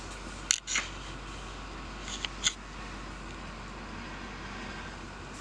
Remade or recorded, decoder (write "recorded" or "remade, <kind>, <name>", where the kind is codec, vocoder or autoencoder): recorded